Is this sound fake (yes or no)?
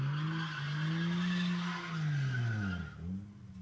no